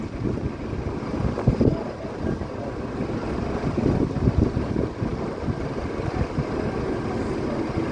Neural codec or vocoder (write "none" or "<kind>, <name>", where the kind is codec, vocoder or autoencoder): none